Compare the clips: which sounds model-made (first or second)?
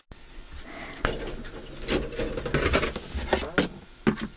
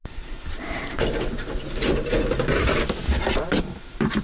second